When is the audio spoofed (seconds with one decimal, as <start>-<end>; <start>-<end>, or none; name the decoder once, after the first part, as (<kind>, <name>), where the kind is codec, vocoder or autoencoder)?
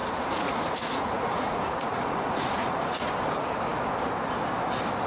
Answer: 0.0-3.1 (vocoder, Vocos)